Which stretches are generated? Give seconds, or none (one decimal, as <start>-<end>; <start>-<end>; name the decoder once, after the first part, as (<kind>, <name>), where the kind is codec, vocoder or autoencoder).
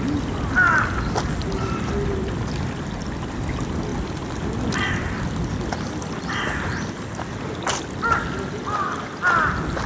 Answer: none